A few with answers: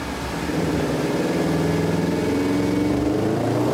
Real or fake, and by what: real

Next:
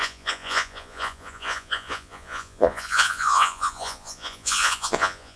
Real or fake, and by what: fake, vocoder, Vocos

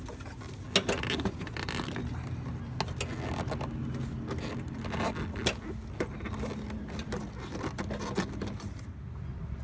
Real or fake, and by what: real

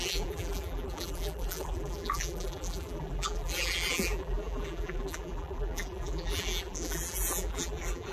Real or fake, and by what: fake, vocoder, BigVGAN v2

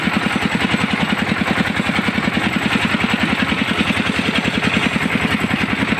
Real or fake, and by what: real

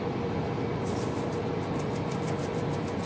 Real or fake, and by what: real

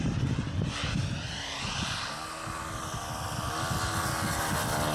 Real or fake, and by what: real